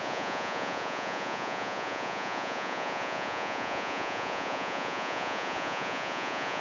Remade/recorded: remade